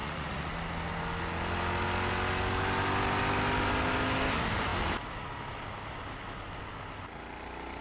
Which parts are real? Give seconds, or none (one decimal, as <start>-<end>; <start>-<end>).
0.5-7.8